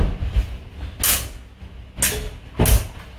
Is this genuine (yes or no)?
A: yes